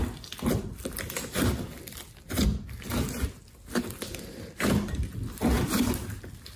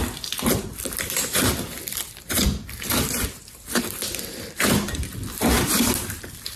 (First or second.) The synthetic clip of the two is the second